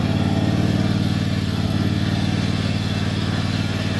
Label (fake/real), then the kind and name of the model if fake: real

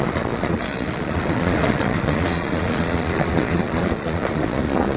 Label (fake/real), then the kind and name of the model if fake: fake, vocoder, Vocos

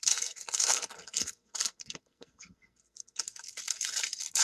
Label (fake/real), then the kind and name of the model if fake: fake, codec, SNAC